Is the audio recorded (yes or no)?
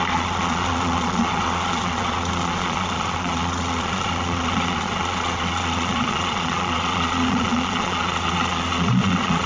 no